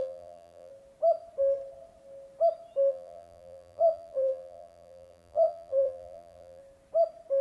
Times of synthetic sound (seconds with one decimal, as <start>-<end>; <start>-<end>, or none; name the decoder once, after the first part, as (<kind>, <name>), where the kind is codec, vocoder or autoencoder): 0.0-0.7 (vocoder, BigVGAN v2); 2.9-6.6